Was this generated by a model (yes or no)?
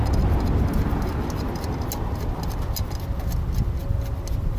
no